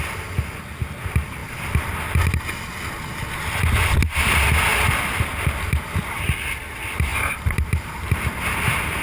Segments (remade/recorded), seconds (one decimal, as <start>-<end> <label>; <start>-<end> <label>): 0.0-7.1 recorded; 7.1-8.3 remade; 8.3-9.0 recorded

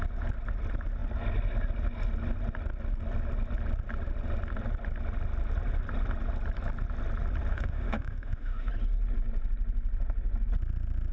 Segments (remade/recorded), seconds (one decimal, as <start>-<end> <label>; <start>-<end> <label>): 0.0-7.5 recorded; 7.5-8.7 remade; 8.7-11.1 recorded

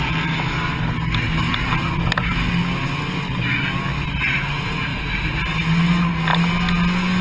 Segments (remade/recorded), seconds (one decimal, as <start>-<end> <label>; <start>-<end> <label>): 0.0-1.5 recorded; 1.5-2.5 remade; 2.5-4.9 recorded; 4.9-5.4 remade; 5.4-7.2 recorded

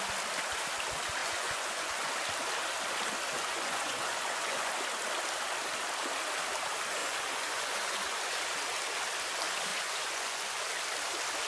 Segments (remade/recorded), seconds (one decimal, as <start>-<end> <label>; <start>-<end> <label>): 0.0-1.2 recorded; 1.2-2.1 remade; 2.1-3.4 recorded; 3.4-4.7 remade; 4.7-7.0 recorded; 7.0-8.4 remade; 8.4-9.7 recorded; 9.7-10.6 remade; 10.6-11.5 recorded

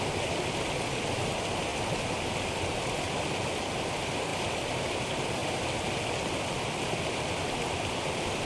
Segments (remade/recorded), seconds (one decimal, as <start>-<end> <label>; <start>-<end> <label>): 0.0-8.4 recorded

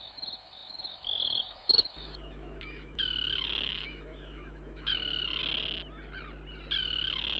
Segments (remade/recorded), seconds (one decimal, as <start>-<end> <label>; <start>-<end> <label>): 0.0-5.4 remade; 5.4-6.8 recorded; 6.8-7.4 remade